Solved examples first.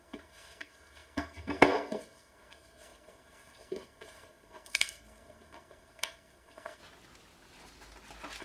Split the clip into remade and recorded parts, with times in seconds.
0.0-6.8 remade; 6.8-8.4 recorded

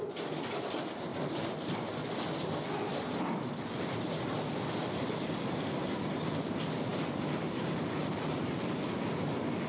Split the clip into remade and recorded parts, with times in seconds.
0.0-1.1 recorded; 1.1-1.7 remade; 1.7-2.9 recorded; 2.9-4.2 remade; 4.2-6.9 recorded; 6.9-8.6 remade; 8.6-9.7 recorded

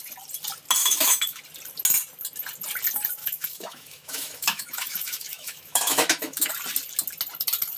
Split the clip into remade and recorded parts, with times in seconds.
0.0-0.8 recorded; 0.8-1.4 remade; 1.4-3.2 recorded; 3.2-6.5 remade; 6.5-7.8 recorded

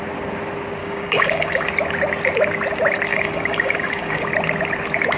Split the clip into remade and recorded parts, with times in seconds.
0.0-0.8 recorded; 0.8-1.7 remade; 1.7-3.1 recorded; 3.1-4.3 remade; 4.3-5.2 recorded

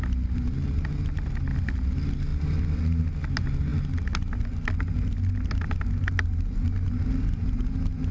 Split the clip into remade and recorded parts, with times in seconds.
0.0-8.1 recorded